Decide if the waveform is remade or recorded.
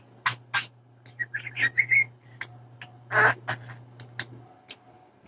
recorded